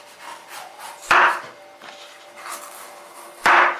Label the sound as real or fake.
fake